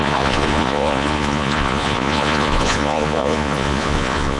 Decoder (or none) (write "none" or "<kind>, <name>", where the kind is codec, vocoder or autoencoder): vocoder, Vocos